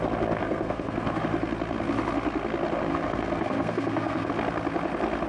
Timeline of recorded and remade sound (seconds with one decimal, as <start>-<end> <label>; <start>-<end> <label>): 0.0-0.4 recorded; 0.4-1.2 remade; 1.2-2.9 recorded; 2.9-4.3 remade; 4.3-5.3 recorded